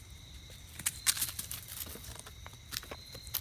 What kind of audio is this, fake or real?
real